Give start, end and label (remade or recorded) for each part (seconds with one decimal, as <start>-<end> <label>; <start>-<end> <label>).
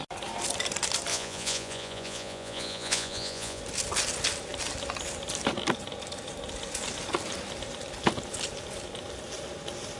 0.0-1.1 recorded; 1.1-3.6 remade; 3.6-10.0 recorded